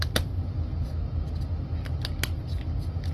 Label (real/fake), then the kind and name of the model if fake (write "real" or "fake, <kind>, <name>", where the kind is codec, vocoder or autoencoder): real